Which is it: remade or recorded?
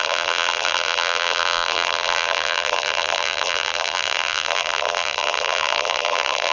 remade